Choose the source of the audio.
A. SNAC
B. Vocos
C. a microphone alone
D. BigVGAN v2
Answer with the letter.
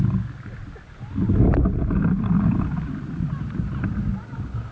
C